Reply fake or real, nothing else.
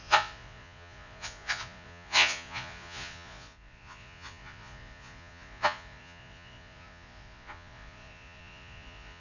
fake